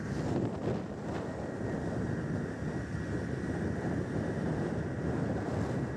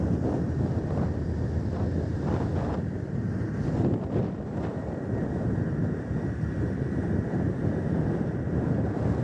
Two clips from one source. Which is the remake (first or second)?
second